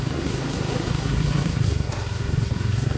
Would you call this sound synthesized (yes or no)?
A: yes